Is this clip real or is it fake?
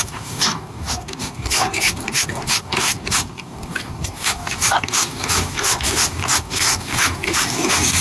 fake